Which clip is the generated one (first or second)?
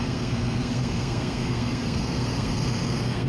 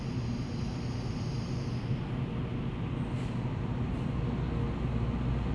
first